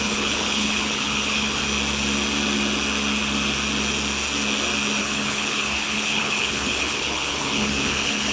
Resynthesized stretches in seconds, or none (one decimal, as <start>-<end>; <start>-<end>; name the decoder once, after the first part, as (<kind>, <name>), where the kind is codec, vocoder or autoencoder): 0.0-1.6 (codec, HILCodec); 5.0-8.3